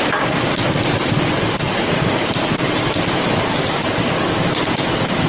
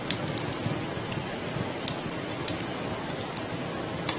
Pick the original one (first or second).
second